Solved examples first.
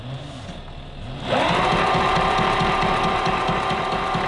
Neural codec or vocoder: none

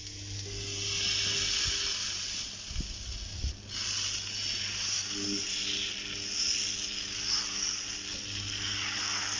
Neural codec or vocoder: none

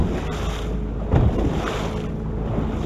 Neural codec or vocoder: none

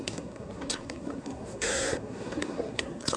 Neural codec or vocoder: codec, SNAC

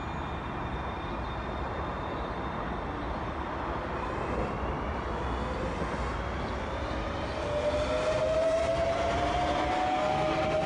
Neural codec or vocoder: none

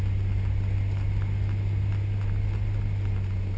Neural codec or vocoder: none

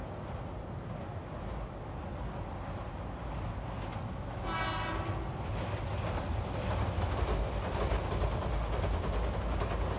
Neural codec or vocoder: none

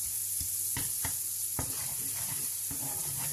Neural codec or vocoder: vocoder, BigVGAN v2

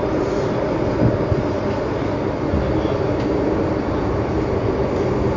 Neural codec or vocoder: none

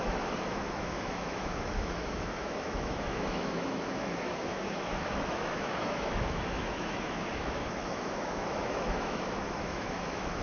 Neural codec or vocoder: autoencoder, DAC-VAE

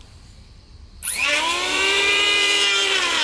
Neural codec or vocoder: vocoder, BigVGAN v2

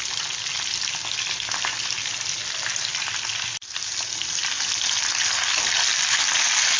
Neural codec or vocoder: none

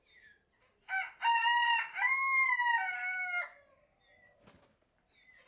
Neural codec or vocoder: none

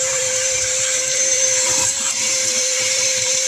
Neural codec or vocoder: vocoder, BigVGAN v2